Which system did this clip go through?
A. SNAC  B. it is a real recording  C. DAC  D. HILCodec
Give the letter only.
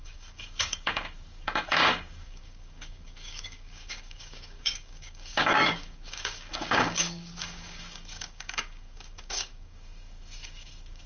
C